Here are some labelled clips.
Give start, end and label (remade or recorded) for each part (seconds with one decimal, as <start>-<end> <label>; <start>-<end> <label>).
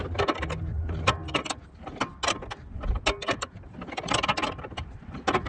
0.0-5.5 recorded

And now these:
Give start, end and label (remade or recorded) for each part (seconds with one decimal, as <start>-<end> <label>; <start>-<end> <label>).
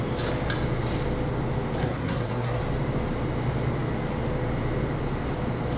0.0-1.8 recorded; 1.8-2.6 remade; 2.6-5.8 recorded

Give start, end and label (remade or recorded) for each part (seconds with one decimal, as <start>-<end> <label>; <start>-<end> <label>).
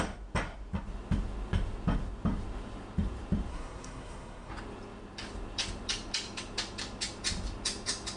0.0-3.5 recorded; 3.5-4.5 remade; 4.5-8.2 recorded